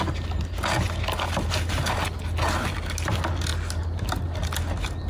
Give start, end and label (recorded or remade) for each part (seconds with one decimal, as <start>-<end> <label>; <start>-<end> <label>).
0.0-5.1 recorded